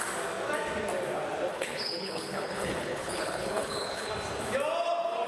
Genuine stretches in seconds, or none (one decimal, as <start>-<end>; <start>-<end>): 0.0-1.5; 4.1-5.3